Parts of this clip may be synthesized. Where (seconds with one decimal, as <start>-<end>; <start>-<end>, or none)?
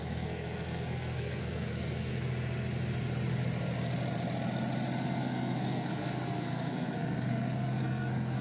0.0-2.1; 5.2-8.4